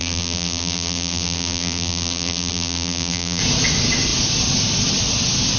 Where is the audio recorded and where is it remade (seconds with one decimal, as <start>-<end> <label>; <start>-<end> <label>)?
0.0-3.4 remade; 3.4-5.6 recorded